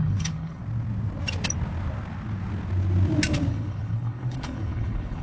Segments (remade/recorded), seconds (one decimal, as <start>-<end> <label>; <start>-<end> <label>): 0.0-0.6 remade; 0.6-3.5 recorded; 3.5-5.2 remade